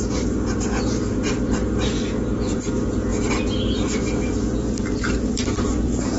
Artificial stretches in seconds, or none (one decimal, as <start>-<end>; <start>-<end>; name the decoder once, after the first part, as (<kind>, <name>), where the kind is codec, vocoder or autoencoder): none

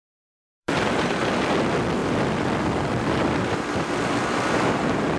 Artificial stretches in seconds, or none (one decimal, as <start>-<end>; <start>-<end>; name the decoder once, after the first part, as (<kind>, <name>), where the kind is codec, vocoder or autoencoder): 0.6-1.1 (vocoder, BigVGAN v2); 2.0-5.2

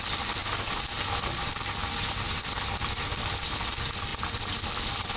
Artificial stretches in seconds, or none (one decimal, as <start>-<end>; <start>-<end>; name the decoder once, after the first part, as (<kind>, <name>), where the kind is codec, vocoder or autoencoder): none

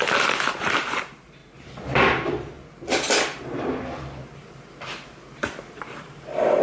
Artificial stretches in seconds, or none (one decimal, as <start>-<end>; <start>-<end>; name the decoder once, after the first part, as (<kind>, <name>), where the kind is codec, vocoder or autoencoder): 0.0-1.4 (vocoder, BigVGAN v2); 5.4-6.6